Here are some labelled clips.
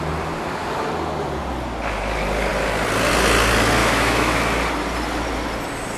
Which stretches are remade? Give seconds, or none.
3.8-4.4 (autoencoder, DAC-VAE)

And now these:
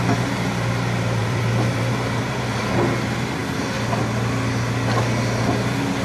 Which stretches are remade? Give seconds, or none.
1.2-2.6 (vocoder, BigVGAN v2)

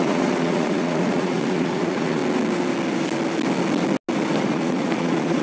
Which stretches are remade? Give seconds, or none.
0.0-2.2 (vocoder, Vocos); 4.4-5.4

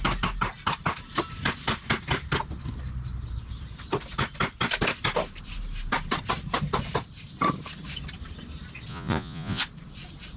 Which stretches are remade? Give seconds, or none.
8.9-9.6 (vocoder, Vocos)

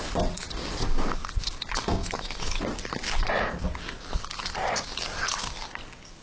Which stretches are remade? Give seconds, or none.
2.0-2.6 (autoencoder, DAC-VAE)

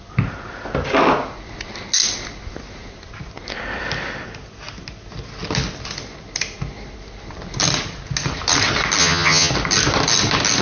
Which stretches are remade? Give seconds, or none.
9.0-9.5 (vocoder, HiFi-GAN)